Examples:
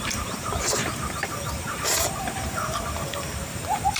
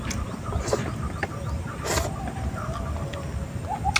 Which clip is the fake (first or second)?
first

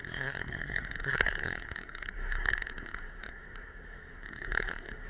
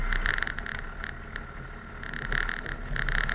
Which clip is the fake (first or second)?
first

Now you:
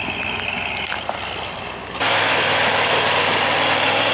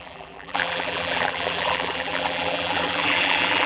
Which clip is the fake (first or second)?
second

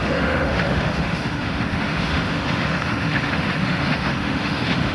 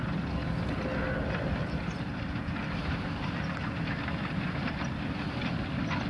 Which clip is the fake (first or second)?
first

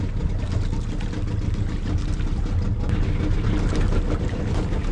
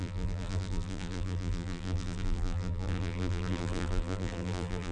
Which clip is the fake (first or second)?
second